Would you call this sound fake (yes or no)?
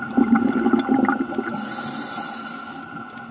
no